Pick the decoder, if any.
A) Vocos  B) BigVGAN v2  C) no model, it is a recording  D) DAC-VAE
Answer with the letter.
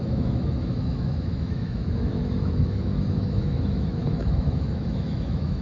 D